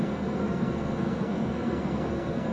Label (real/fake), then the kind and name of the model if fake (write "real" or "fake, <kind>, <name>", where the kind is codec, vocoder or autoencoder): fake, codec, SNAC